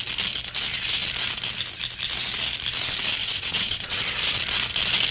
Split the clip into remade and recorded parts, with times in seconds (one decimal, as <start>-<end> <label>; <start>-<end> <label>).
0.0-3.2 recorded; 3.2-4.0 remade; 4.0-5.1 recorded